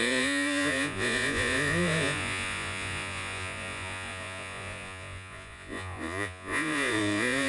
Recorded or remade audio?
remade